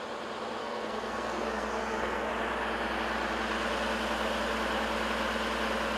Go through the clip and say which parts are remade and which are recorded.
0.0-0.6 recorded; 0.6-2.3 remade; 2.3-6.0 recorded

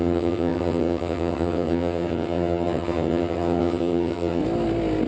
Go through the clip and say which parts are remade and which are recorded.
0.0-4.4 remade; 4.4-5.1 recorded